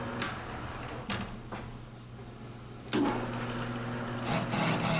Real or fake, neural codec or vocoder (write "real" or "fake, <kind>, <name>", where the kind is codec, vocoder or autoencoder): real